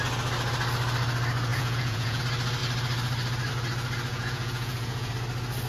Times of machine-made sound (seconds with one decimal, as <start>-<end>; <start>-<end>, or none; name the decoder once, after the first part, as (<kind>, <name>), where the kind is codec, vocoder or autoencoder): 1.5-2.2 (vocoder, Vocos); 4.1-5.1